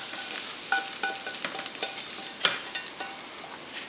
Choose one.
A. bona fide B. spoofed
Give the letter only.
A